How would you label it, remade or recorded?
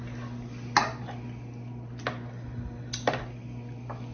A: recorded